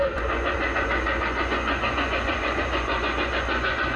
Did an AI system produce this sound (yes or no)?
yes